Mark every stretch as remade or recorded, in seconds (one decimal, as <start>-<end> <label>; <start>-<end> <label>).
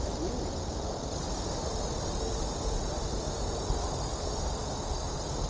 0.0-5.5 recorded